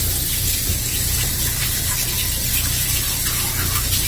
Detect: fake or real real